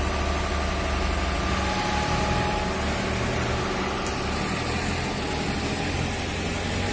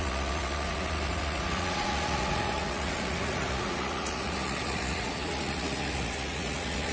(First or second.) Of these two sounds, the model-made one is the second